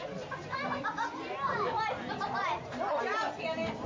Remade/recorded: recorded